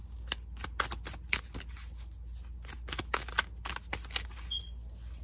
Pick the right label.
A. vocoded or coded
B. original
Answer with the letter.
B